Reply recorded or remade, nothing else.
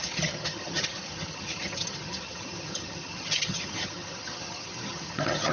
remade